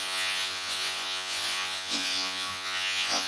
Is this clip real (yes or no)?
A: no